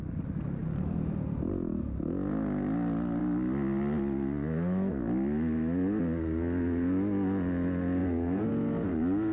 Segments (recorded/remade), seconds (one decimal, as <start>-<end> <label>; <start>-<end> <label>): 0.0-0.6 recorded; 0.6-1.5 remade; 1.5-9.3 recorded